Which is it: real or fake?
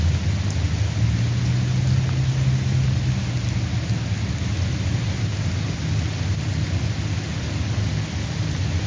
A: real